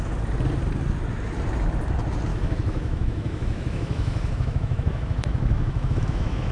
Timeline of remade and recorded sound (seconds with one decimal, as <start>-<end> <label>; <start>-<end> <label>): 0.0-2.3 recorded; 2.3-6.5 remade